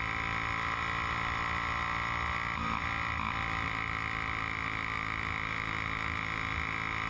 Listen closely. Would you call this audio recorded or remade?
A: recorded